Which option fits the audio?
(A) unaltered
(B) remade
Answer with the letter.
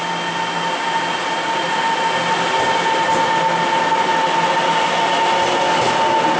A